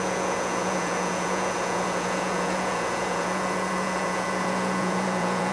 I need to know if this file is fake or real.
fake